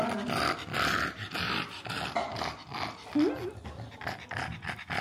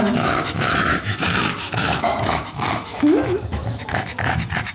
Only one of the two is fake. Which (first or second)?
second